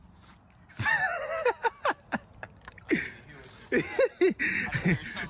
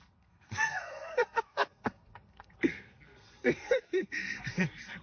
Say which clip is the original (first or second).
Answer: first